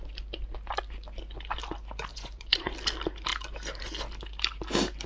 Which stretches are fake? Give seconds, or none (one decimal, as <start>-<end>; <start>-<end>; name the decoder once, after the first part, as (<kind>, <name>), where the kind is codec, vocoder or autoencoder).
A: 2.1-2.7 (vocoder, Vocos)